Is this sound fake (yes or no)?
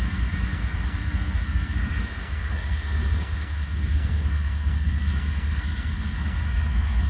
yes